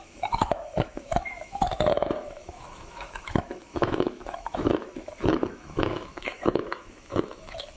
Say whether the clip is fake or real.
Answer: fake